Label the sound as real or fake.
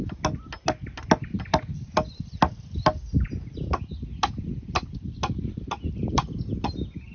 real